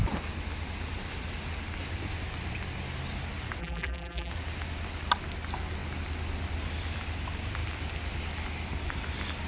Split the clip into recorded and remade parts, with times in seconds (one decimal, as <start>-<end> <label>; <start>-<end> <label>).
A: 0.0-3.6 recorded; 3.6-4.3 remade; 4.3-9.5 recorded